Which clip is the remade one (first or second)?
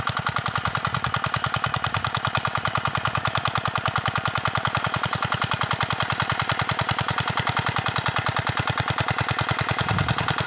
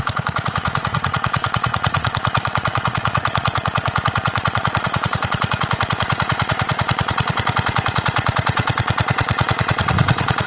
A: second